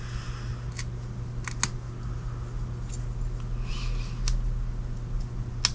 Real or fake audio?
real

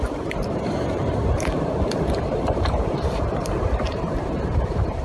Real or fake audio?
fake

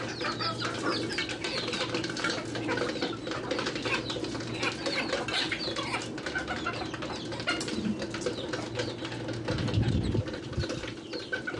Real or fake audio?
real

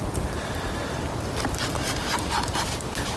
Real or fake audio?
real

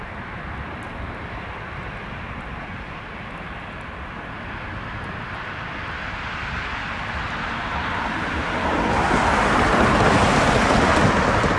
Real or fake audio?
real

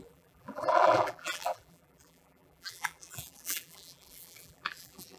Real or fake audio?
fake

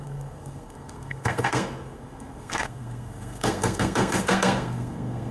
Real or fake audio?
fake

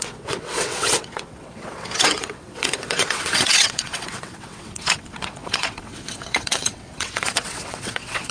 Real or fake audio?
fake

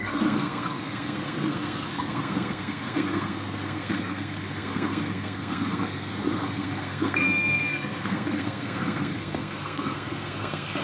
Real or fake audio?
fake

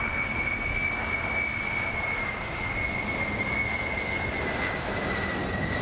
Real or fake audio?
real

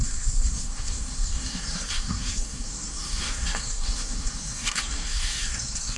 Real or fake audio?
fake